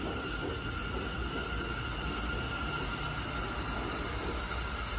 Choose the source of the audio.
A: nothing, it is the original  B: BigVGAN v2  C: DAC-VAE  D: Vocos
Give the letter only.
A